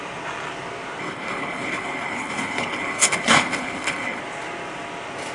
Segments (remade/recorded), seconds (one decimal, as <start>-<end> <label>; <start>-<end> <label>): 0.0-1.0 recorded; 1.0-4.2 remade; 4.2-5.3 recorded